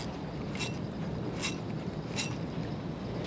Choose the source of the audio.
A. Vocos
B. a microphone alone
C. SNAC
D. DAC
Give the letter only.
B